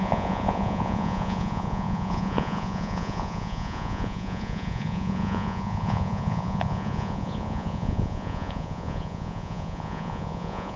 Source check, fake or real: fake